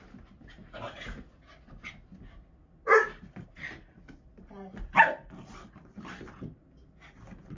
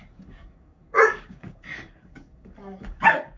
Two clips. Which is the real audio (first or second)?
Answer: first